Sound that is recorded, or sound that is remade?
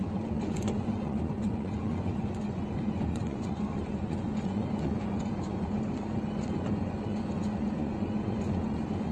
remade